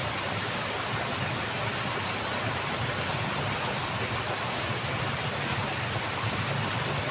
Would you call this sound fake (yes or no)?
no